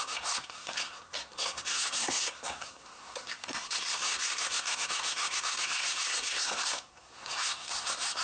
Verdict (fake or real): fake